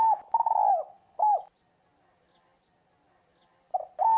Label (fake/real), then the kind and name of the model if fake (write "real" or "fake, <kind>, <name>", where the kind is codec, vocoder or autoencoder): real